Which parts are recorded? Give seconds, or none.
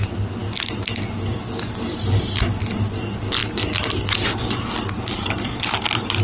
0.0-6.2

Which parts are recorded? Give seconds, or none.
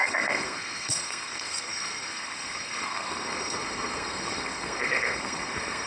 none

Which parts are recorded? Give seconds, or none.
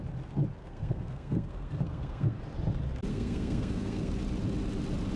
0.0-0.6; 2.4-3.1; 4.1-5.2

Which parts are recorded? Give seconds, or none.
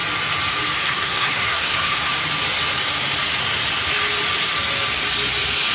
0.0-0.8; 2.1-5.7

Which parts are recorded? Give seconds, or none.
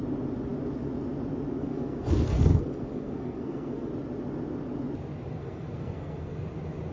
0.0-1.6; 3.9-5.4; 6.4-6.9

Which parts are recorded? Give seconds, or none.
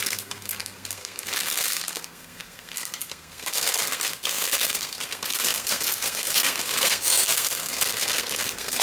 none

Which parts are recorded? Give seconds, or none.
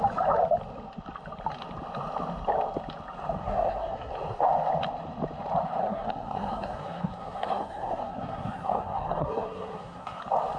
0.0-3.4; 4.1-5.8; 10.2-10.6